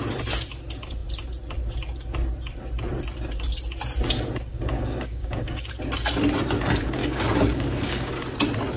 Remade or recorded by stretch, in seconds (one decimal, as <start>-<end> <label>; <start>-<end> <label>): 0.0-4.5 recorded; 4.5-5.7 remade; 5.7-7.0 recorded; 7.0-8.1 remade; 8.1-8.8 recorded